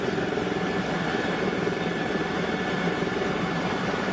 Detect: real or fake fake